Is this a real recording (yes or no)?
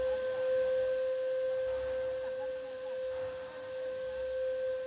yes